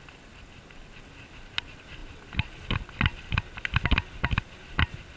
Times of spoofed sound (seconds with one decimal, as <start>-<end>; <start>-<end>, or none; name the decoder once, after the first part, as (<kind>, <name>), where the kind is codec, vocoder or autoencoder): none

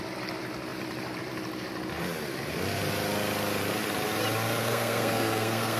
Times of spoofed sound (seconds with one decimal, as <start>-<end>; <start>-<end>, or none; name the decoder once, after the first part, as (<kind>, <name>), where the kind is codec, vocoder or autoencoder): 4.6-5.8 (codec, SNAC)

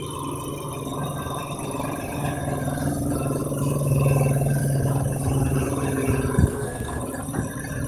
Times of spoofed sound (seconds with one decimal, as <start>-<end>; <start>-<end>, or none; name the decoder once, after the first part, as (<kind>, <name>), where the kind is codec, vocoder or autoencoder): 6.5-7.0 (codec, SNAC)

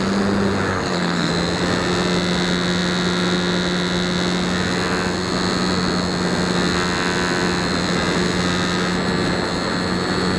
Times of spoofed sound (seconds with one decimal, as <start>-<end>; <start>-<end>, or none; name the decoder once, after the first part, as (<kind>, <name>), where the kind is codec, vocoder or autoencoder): 0.7-1.3 (codec, SNAC)

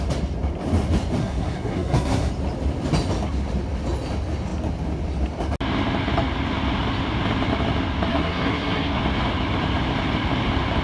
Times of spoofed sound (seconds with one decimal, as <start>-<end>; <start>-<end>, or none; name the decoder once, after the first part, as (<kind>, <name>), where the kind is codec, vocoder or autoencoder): 1.2-2.3 (codec, SNAC); 8.1-9.0

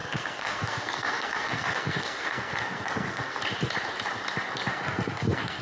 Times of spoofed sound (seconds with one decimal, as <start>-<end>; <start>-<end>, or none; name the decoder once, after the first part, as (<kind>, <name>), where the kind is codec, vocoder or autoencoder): 0.0-3.4 (codec, SNAC); 4.7-5.6